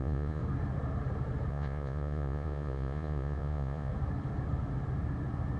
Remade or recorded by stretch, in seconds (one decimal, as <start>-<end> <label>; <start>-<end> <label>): 0.0-0.4 remade; 0.4-1.5 recorded; 1.5-3.9 remade; 3.9-5.6 recorded